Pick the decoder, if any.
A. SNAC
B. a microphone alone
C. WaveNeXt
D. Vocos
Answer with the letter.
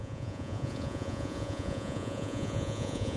D